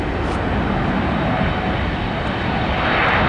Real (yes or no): yes